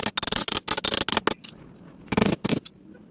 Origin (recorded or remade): recorded